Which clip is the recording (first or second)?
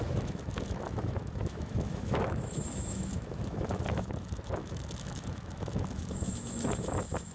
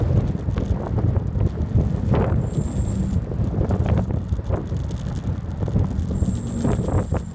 second